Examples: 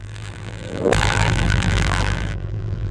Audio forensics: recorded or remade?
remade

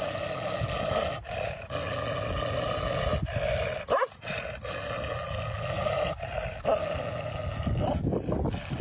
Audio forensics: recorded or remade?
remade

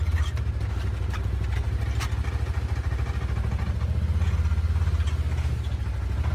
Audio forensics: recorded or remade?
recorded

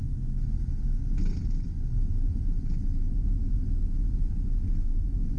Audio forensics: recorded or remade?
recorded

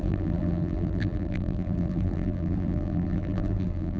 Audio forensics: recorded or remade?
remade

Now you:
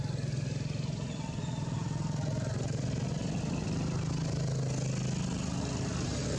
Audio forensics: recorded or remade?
recorded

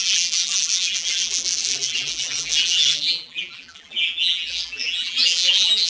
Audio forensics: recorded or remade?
remade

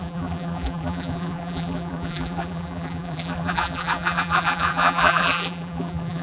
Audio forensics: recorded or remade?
remade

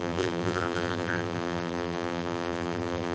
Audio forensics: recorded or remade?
remade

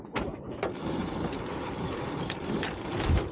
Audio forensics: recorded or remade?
remade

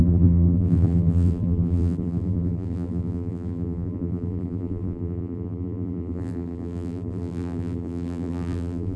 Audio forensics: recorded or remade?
remade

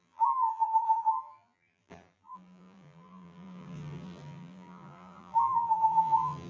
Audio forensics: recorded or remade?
remade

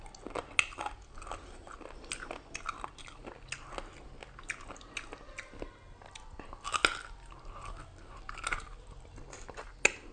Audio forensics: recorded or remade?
recorded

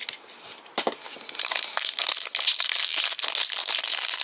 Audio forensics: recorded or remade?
recorded